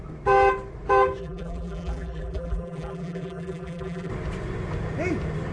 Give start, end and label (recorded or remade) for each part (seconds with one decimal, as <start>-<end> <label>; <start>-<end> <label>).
0.0-1.2 recorded; 1.2-4.1 remade; 4.1-5.5 recorded